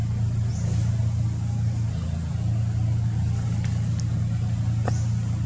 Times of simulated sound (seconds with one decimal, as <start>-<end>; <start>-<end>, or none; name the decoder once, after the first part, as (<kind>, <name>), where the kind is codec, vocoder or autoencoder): none